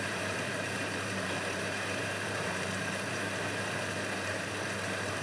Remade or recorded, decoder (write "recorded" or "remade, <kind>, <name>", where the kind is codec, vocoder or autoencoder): remade, vocoder, BigVGAN v2